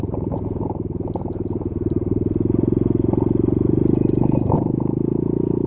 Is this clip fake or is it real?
real